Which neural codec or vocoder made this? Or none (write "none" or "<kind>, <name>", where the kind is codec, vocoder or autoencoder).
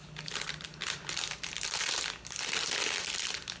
none